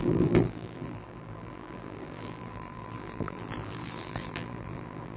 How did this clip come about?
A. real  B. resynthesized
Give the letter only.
B